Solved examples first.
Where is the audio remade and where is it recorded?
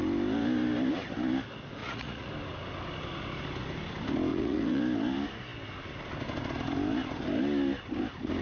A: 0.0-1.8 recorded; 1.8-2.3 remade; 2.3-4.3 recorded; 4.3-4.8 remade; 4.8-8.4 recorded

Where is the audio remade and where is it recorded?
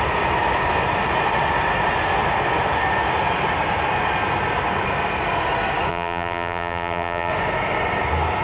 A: 0.0-5.9 recorded; 5.9-7.3 remade; 7.3-8.4 recorded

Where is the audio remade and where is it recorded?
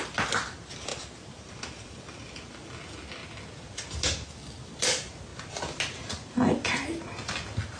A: 0.0-7.8 recorded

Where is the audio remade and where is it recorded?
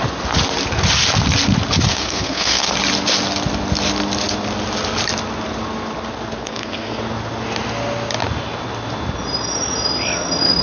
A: 0.0-1.9 recorded; 1.9-2.7 remade; 2.7-6.4 recorded; 6.4-7.0 remade; 7.0-10.6 recorded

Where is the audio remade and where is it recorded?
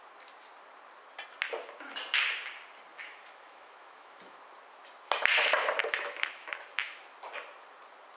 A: 0.0-2.9 recorded; 2.9-4.4 remade; 4.4-5.8 recorded; 5.8-7.0 remade; 7.0-8.2 recorded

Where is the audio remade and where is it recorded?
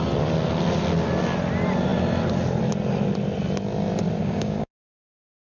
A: 0.0-4.2 recorded; 4.2-4.8 remade; 4.8-5.5 recorded